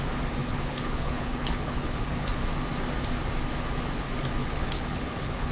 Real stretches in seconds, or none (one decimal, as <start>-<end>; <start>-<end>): 0.0-0.4; 2.3-4.4